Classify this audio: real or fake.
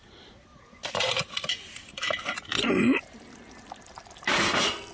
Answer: real